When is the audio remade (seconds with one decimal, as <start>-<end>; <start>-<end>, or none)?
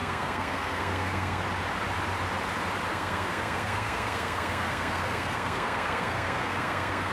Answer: 0.0-1.4; 2.9-7.1